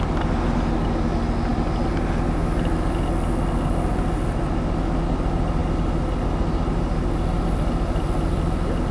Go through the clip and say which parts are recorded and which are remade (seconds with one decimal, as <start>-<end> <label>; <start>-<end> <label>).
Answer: 0.0-8.9 recorded